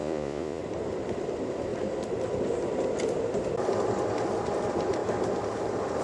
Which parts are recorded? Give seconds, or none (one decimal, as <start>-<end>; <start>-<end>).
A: 0.6-6.0

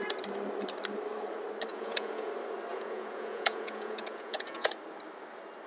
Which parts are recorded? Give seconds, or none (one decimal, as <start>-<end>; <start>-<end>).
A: 0.0-1.7; 2.3-2.7; 4.7-5.7